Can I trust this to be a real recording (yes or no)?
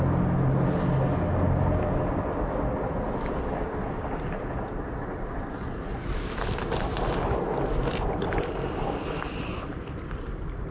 yes